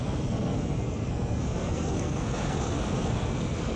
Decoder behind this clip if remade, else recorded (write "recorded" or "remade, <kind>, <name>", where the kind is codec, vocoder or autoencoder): remade, codec, SNAC